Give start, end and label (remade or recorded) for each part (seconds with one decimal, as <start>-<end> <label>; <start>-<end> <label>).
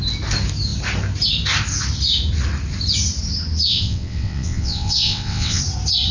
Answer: 0.0-3.7 recorded; 3.7-5.6 remade; 5.6-6.1 recorded